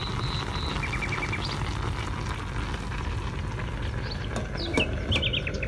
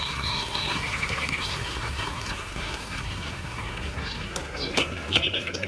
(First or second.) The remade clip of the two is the second